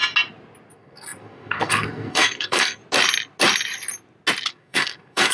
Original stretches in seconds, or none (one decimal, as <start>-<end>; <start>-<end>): 0.0-0.7; 2.8-4.5